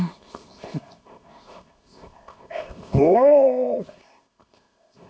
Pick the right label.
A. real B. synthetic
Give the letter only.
B